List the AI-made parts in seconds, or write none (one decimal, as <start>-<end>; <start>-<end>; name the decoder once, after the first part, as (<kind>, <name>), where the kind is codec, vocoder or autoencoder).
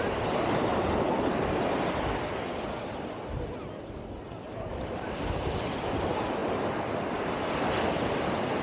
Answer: 0.7-3.5 (vocoder, BigVGAN v2); 6.4-7.7